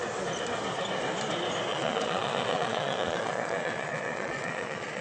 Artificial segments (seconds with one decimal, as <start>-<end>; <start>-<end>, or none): 1.7-5.0